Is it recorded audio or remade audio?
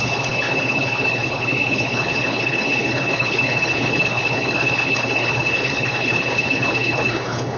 remade